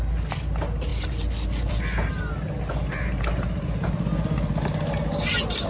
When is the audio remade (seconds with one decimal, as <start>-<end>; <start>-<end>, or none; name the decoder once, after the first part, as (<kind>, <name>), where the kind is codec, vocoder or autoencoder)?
none